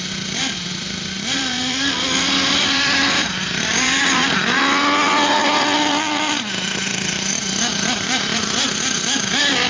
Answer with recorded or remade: remade